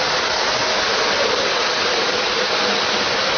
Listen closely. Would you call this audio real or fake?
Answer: real